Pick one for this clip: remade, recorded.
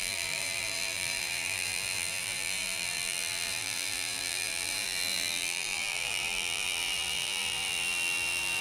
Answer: remade